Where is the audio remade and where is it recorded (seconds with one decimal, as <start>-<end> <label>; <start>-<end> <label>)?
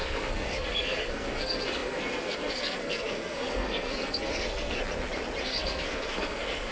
0.0-4.8 remade; 4.8-5.4 recorded; 5.4-6.7 remade